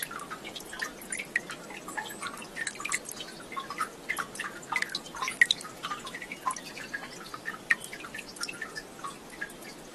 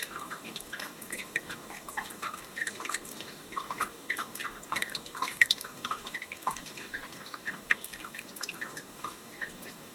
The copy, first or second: second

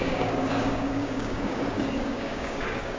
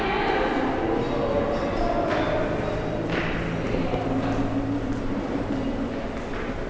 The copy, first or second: first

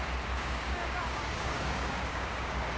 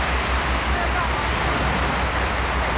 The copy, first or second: first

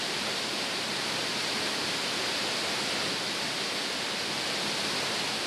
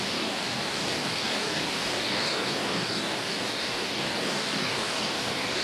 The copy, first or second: second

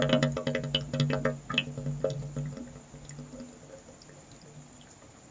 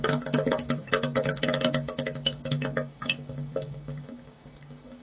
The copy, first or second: second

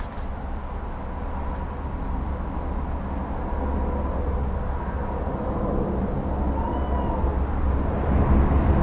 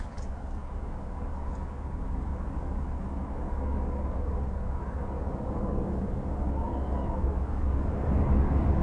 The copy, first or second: second